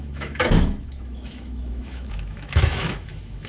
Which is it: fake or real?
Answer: fake